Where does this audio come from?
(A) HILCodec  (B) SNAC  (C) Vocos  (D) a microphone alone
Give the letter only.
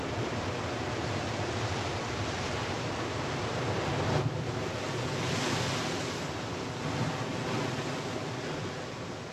D